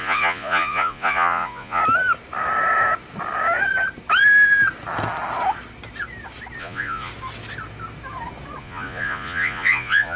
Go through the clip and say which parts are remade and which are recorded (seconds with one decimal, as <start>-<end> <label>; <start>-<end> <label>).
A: 0.0-1.8 remade; 1.8-6.6 recorded; 6.6-7.1 remade; 7.1-8.6 recorded; 8.6-10.2 remade

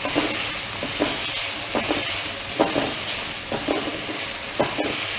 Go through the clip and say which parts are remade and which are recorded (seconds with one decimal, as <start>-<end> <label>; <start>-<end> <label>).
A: 0.0-5.2 recorded